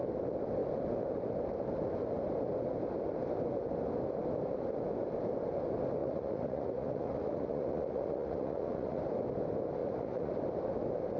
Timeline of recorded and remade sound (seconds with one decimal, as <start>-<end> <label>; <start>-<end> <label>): 0.0-6.0 recorded; 6.0-9.0 remade; 9.0-9.8 recorded; 9.8-10.3 remade; 10.3-11.2 recorded